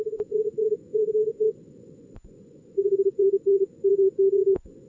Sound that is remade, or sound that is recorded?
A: remade